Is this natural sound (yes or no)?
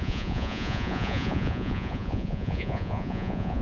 no